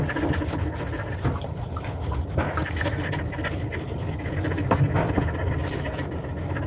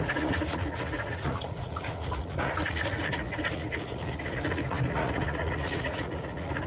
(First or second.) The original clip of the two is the first